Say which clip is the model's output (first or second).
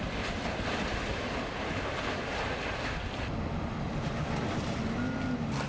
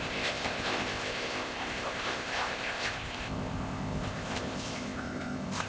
second